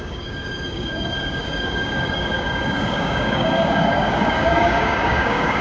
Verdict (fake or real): fake